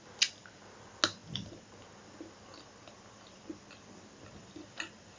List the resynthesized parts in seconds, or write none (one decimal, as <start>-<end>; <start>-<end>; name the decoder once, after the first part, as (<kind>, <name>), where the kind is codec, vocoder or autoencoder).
none

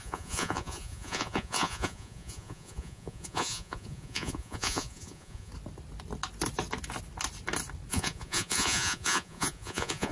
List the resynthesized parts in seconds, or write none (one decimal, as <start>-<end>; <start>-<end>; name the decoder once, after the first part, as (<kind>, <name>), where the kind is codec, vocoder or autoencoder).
0.0-5.5 (vocoder, Vocos); 7.9-10.1

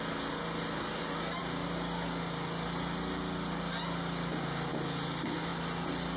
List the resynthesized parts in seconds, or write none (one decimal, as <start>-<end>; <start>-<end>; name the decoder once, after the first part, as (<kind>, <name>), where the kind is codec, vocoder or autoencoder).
none

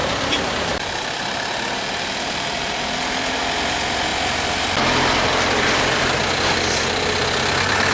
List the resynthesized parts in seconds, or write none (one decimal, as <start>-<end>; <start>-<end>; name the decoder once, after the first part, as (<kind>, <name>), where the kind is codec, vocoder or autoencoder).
0.0-3.4 (vocoder, BigVGAN v2)

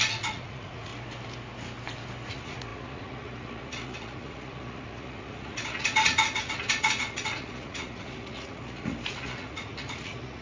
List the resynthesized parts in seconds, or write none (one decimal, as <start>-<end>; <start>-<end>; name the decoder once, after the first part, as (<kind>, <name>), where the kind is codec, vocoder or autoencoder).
0.0-0.9 (vocoder, Vocos); 2.3-10.4

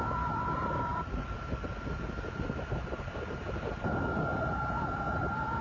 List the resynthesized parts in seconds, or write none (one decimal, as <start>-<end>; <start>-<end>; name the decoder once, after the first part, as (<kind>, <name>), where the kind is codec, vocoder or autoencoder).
none

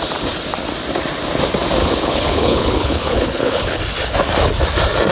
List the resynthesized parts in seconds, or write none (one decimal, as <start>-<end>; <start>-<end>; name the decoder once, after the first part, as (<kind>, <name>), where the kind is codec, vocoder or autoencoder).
1.8-3.8 (codec, HILCodec)